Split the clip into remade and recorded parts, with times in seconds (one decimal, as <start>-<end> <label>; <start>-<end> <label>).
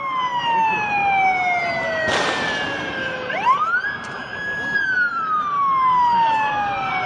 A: 0.0-4.3 recorded; 4.3-5.4 remade; 5.4-7.1 recorded